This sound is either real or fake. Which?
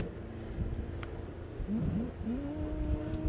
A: real